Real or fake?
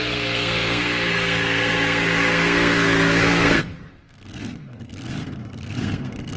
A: fake